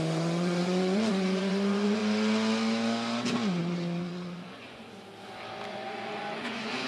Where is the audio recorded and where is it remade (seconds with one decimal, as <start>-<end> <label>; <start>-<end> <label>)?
0.0-2.0 remade; 2.0-3.6 recorded; 3.6-4.8 remade; 4.8-5.7 recorded; 5.7-6.9 remade